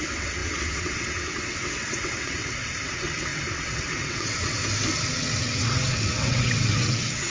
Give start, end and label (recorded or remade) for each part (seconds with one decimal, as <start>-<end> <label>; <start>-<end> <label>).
0.0-4.6 remade; 4.6-5.2 recorded; 5.2-7.3 remade